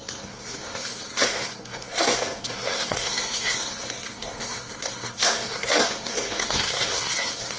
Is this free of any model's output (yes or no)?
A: no